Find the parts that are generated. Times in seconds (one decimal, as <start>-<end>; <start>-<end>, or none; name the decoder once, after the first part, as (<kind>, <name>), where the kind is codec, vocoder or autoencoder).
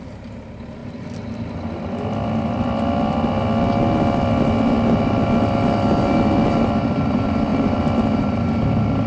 none